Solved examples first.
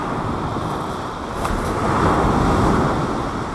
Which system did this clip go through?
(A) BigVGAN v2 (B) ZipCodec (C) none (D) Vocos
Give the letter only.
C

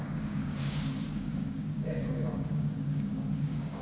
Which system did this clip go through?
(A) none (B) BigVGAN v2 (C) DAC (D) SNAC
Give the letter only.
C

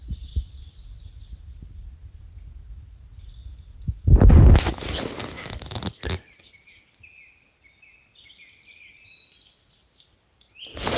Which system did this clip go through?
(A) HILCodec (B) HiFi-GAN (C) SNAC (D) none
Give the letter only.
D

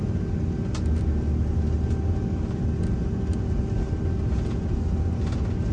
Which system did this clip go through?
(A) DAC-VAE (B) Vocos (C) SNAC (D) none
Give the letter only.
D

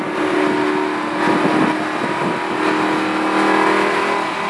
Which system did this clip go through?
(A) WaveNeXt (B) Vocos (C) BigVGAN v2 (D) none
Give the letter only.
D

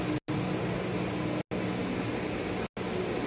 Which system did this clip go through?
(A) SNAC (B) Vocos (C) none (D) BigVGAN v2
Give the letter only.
C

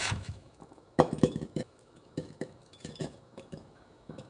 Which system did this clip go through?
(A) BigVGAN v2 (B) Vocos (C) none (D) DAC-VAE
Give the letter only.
D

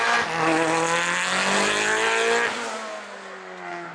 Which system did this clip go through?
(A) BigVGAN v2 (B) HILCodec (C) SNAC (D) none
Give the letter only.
D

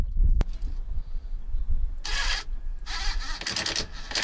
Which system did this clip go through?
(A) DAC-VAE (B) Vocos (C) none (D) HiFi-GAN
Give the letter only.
C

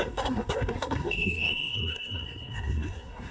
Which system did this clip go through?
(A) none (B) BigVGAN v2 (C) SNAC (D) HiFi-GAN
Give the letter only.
C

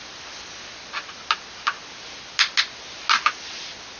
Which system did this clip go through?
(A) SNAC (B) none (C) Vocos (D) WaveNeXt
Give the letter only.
B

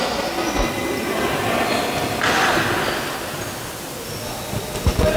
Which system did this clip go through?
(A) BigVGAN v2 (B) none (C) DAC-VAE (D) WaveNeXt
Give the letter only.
B